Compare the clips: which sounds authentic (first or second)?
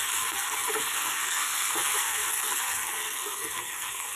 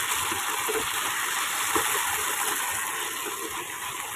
second